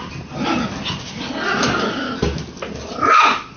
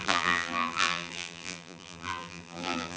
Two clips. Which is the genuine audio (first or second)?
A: first